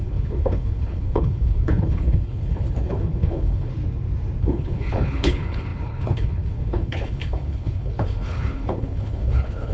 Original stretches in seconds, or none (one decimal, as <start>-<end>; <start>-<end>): 3.7-4.4